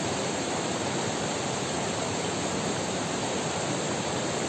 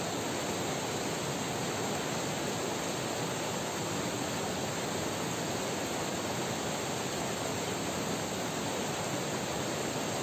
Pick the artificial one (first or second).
first